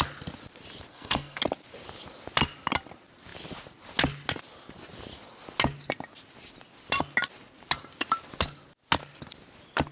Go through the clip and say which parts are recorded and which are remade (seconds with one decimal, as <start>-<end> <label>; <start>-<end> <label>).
0.0-0.9 recorded; 0.9-1.4 remade; 1.4-9.9 recorded